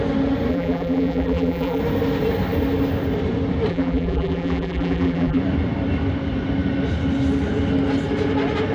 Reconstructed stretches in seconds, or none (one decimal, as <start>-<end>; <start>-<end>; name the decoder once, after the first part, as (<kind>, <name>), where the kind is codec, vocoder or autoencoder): 0.5-1.8 (vocoder, BigVGAN v2); 3.7-5.4